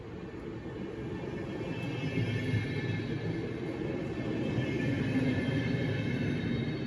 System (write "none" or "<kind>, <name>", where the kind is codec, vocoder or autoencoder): none